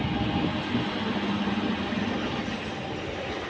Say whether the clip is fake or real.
real